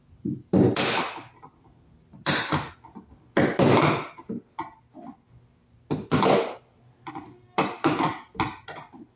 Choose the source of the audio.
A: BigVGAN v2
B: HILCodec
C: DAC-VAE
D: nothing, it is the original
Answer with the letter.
D